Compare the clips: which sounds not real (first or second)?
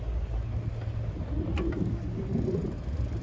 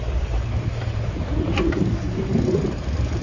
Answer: second